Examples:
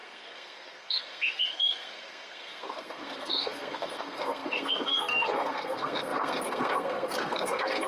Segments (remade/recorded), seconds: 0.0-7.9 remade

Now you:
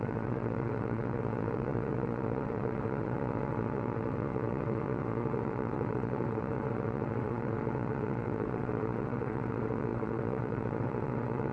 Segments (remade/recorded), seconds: 0.0-11.5 remade